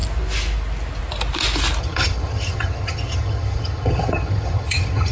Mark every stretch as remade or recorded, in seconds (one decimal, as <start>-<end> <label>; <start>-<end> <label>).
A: 0.0-1.8 recorded; 1.8-5.1 remade